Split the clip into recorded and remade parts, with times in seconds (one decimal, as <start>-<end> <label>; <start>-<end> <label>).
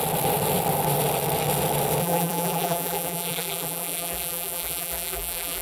0.0-2.0 recorded; 2.0-5.6 remade